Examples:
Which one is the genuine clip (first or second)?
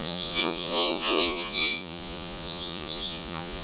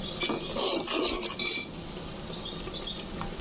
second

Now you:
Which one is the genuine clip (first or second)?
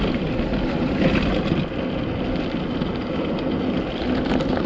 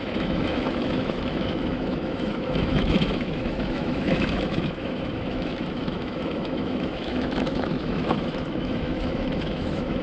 first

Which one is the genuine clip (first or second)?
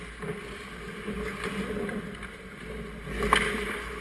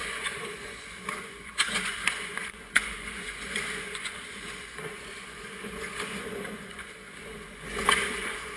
first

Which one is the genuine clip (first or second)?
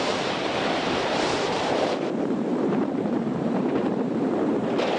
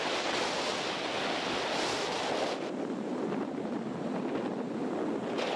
second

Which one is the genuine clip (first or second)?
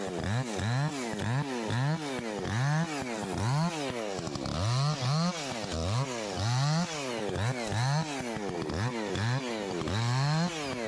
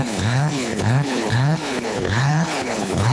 first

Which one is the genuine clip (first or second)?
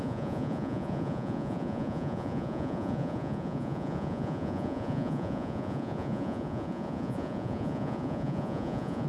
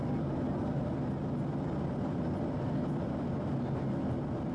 second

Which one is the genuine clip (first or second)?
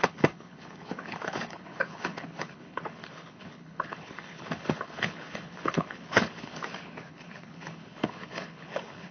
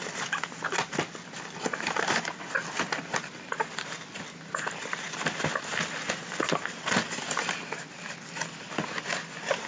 second